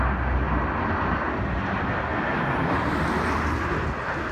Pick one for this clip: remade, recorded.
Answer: recorded